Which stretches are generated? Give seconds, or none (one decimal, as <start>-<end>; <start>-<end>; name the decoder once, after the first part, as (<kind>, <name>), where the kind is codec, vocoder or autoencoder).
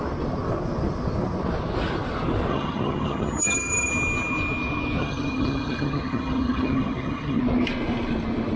2.5-3.9 (vocoder, HiFi-GAN); 5.0-7.4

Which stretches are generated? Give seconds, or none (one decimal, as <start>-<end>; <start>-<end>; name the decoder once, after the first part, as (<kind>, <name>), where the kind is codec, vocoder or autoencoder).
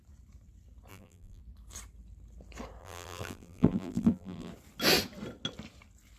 0.9-1.4 (vocoder, BigVGAN v2); 2.8-4.5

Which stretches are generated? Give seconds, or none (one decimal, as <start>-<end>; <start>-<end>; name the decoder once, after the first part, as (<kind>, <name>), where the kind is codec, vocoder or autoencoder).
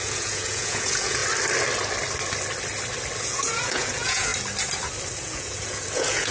0.0-1.2 (vocoder, Vocos); 3.2-4.3; 5.2-6.3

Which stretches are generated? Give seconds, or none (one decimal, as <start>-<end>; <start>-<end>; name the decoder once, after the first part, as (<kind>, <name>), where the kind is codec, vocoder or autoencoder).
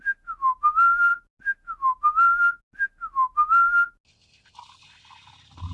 none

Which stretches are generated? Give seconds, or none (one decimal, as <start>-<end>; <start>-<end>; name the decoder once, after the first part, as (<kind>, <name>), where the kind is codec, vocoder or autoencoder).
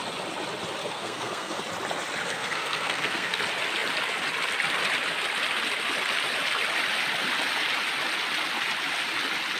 0.8-1.6 (codec, SNAC); 2.3-3.4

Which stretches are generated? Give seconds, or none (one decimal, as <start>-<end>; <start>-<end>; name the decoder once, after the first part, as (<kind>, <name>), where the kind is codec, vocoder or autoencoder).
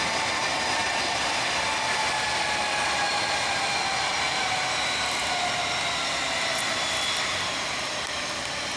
none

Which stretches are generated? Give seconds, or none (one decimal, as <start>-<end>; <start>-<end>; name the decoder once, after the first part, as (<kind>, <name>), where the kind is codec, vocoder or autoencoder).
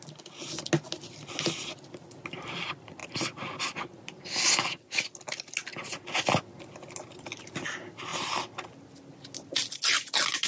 none